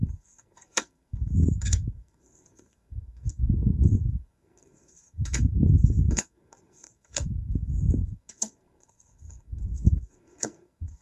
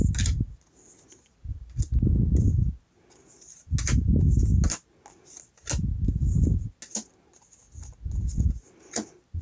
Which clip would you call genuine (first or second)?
second